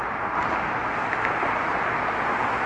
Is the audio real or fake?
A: real